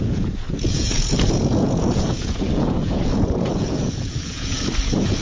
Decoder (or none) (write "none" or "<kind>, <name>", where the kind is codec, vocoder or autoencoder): vocoder, Vocos